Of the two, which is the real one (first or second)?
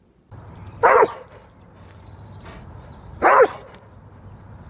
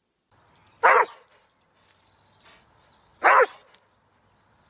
second